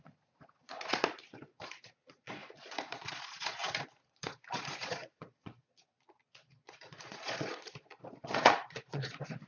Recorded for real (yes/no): no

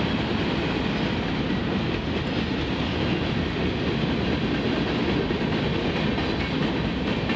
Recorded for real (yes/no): yes